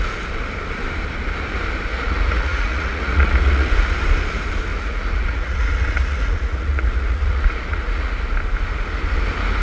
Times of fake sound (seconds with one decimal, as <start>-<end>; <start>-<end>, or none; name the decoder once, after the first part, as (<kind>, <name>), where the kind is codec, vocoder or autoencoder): 1.9-3.7 (vocoder, Vocos); 4.7-8.1